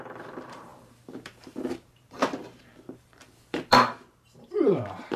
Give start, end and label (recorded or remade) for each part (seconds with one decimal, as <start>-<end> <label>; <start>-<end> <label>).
0.0-5.2 remade